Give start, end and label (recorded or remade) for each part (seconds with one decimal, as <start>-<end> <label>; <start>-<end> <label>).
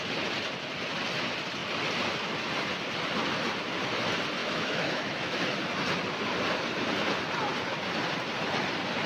0.0-4.4 recorded; 4.4-5.4 remade; 5.4-9.1 recorded